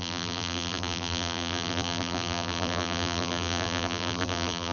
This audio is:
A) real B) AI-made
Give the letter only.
B